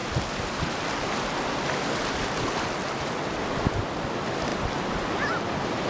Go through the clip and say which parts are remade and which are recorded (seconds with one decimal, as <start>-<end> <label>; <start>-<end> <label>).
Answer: 0.0-5.9 recorded